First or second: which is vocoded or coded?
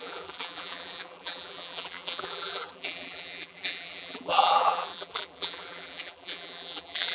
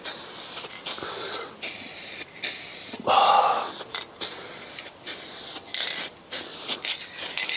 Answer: first